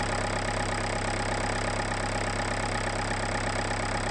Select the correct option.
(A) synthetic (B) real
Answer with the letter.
B